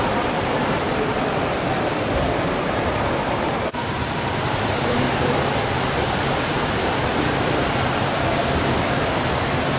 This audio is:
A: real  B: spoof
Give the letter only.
B